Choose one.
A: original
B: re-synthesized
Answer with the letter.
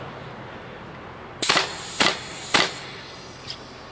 A